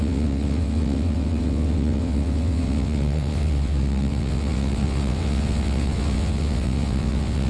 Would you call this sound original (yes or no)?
no